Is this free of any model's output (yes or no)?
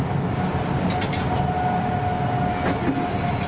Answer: yes